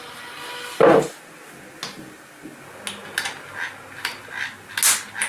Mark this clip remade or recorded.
recorded